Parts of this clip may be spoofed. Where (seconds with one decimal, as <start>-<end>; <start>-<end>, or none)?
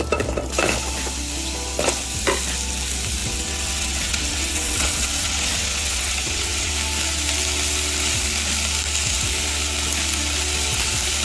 3.2-6.7